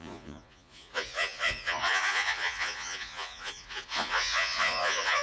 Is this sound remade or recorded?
remade